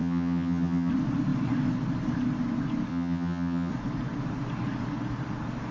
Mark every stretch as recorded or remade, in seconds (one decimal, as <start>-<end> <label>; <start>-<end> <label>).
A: 0.0-0.9 remade; 0.9-2.9 recorded; 2.9-3.7 remade; 3.7-5.7 recorded